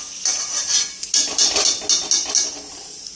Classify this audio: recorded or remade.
recorded